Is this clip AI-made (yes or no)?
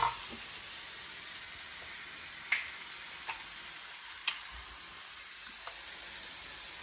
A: no